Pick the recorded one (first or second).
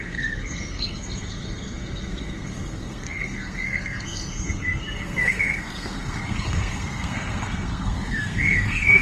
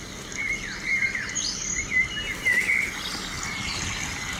second